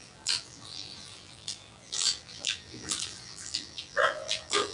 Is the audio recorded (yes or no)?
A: no